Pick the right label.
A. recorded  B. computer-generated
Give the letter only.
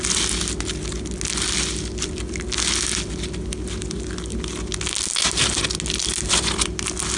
A